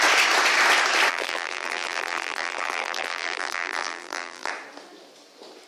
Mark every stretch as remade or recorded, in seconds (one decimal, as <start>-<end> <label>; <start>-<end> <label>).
0.0-1.1 recorded; 1.1-4.5 remade; 4.5-5.7 recorded